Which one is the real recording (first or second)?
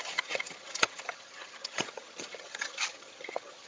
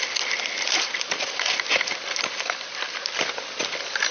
second